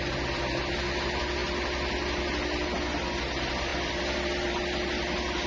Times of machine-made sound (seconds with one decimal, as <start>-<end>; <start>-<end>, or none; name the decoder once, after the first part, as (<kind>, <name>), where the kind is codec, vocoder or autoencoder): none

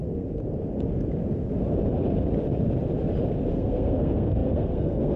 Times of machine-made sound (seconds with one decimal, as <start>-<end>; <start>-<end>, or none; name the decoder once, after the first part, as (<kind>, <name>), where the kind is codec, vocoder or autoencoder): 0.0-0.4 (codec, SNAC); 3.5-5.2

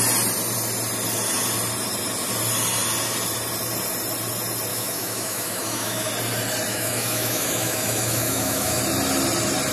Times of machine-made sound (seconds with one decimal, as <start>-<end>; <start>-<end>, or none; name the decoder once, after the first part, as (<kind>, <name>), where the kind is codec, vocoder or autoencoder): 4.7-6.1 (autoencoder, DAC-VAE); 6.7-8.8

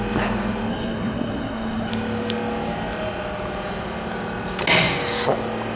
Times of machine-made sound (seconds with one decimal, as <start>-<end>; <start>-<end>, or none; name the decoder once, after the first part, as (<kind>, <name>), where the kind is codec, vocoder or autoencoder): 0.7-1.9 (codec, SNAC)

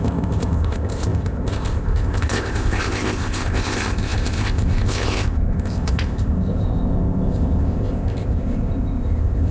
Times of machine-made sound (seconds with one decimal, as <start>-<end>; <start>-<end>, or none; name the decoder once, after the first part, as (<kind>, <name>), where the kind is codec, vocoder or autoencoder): 0.0-9.5 (codec, ZipCodec)

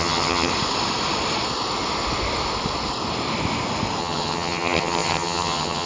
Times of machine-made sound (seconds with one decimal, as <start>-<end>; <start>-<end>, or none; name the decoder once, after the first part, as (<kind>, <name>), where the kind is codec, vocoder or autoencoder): 0.0-0.5 (vocoder, HiFi-GAN); 4.0-5.9

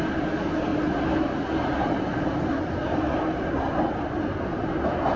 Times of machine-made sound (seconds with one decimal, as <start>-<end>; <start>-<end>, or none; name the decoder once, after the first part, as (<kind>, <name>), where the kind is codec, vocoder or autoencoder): none